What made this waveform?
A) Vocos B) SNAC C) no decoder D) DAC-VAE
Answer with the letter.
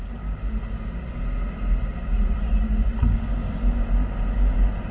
C